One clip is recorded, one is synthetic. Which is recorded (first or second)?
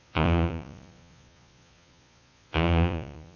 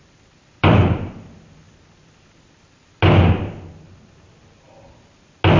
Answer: second